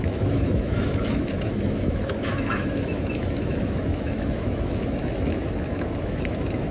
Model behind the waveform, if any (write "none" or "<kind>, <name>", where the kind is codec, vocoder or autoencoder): autoencoder, DAC-VAE